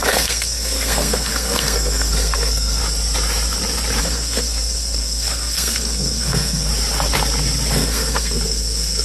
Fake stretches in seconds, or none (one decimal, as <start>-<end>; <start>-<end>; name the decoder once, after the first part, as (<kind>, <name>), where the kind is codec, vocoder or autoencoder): 0.0-2.8 (codec, SNAC); 4.0-6.7; 7.7-9.0